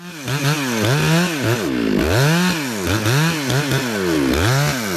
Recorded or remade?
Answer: recorded